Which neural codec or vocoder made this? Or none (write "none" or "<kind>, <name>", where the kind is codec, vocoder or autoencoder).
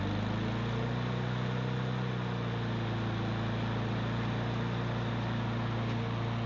none